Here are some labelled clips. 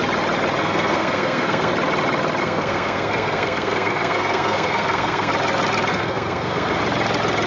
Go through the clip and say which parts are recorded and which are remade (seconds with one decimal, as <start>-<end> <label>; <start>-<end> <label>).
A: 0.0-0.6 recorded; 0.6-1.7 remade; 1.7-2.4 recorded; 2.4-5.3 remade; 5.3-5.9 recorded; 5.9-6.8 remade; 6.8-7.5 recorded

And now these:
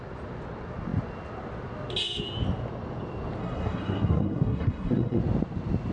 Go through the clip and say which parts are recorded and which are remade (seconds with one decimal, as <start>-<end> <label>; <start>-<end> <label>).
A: 0.0-3.4 recorded; 3.4-5.2 remade; 5.2-5.9 recorded

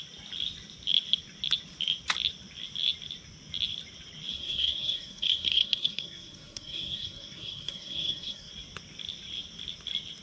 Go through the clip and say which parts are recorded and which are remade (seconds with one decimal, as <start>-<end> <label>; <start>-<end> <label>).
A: 0.0-4.3 recorded; 4.3-8.5 remade; 8.5-10.2 recorded

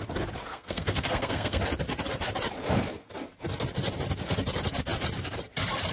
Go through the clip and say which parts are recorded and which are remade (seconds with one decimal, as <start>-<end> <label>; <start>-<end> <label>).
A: 0.0-0.5 recorded; 0.5-1.6 remade; 1.6-5.9 recorded

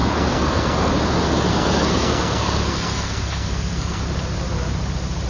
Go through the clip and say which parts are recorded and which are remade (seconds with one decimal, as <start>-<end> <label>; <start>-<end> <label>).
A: 0.0-0.9 remade; 0.9-1.5 recorded; 1.5-4.0 remade; 4.0-5.3 recorded

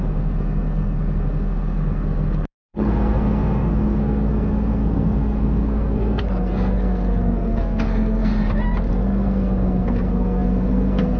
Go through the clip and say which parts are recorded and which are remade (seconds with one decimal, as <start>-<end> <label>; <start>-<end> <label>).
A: 0.0-8.3 remade; 8.3-8.9 recorded; 8.9-11.2 remade

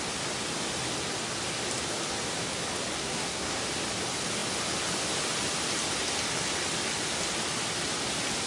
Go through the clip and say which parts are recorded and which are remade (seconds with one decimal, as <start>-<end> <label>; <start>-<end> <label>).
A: 0.0-3.0 recorded; 3.0-3.6 remade; 3.6-8.5 recorded

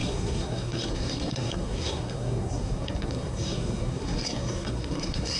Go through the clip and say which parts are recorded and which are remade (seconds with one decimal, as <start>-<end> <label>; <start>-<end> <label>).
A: 0.0-5.4 remade